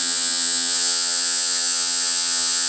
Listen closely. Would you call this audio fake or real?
fake